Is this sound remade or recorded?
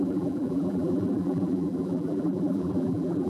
remade